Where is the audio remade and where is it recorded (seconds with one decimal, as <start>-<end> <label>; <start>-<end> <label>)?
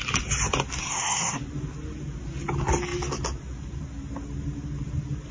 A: 0.0-0.8 recorded; 0.8-1.4 remade; 1.4-5.3 recorded